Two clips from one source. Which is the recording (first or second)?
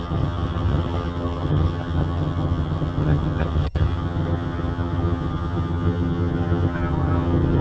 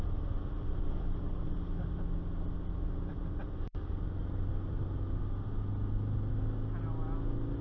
second